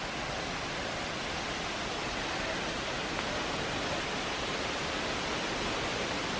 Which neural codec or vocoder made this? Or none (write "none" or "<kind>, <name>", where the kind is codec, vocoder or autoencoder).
none